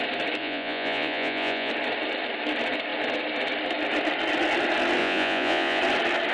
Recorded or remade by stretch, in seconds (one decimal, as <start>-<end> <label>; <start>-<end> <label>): 0.0-0.4 recorded; 0.4-1.7 remade; 1.7-5.0 recorded; 5.0-5.8 remade; 5.8-6.3 recorded